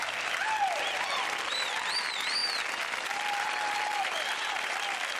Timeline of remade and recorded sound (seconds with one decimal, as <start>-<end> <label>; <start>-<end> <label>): 0.0-5.2 recorded